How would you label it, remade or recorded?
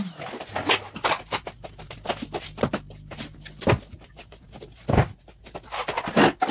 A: recorded